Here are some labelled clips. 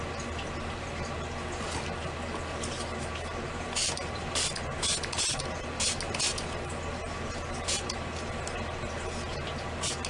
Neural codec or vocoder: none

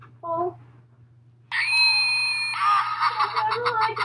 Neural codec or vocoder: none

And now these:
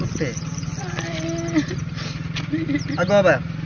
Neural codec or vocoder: none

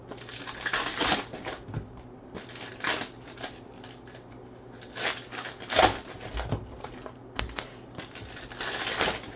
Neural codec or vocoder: none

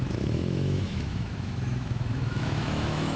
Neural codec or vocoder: autoencoder, DAC-VAE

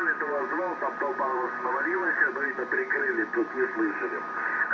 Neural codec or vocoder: none